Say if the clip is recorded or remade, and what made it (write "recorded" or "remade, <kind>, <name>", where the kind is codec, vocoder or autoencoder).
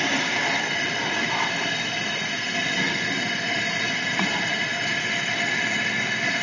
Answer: recorded